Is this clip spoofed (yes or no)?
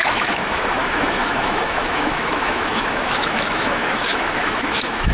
yes